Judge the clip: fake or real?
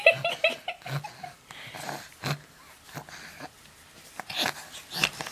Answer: real